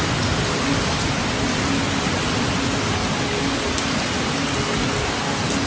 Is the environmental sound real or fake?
real